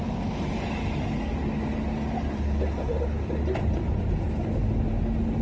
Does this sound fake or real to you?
real